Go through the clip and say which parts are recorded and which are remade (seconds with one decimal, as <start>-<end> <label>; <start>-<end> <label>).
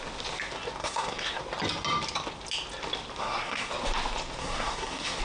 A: 0.0-0.8 recorded; 0.8-1.4 remade; 1.4-3.2 recorded; 3.2-3.7 remade; 3.7-4.4 recorded; 4.4-5.2 remade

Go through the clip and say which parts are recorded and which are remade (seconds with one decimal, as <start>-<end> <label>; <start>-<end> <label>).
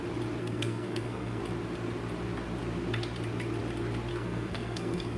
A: 0.0-0.4 recorded; 0.4-1.4 remade; 1.4-4.1 recorded; 4.1-5.2 remade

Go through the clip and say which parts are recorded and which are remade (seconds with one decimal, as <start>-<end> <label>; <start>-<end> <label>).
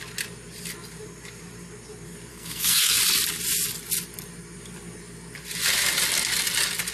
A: 0.0-2.3 recorded; 2.3-3.0 remade; 3.0-6.9 recorded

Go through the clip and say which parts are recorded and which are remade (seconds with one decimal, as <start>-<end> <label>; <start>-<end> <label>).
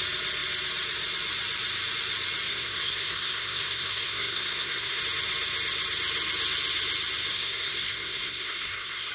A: 0.0-2.5 recorded; 2.5-5.0 remade; 5.0-7.3 recorded; 7.3-9.1 remade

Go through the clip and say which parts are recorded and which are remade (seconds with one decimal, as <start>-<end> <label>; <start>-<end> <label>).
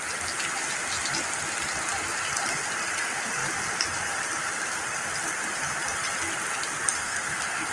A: 0.0-7.0 recorded; 7.0-7.7 remade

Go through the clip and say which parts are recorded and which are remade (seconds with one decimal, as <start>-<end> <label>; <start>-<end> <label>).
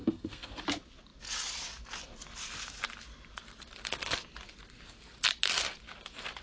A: 0.0-0.6 remade; 0.6-6.4 recorded